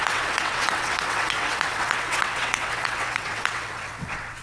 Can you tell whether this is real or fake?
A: fake